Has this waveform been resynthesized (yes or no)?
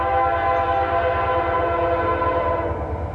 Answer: no